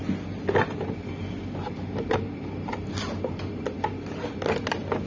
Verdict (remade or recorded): recorded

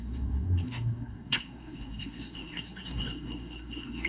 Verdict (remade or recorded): remade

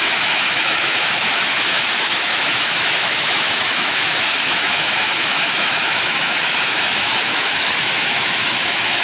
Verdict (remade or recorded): remade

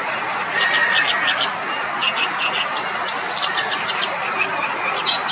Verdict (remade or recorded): recorded